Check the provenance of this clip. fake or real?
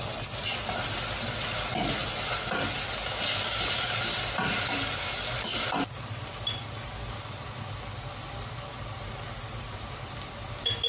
real